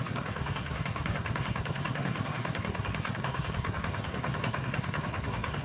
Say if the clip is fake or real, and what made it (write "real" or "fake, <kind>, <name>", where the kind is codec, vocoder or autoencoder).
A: fake, codec, SNAC